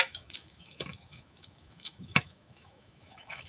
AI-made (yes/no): yes